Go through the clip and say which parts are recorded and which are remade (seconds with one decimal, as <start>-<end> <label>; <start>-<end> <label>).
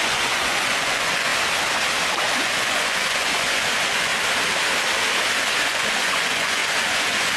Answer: 0.0-1.3 remade; 1.3-2.2 recorded; 2.2-4.1 remade; 4.1-5.6 recorded; 5.6-7.4 remade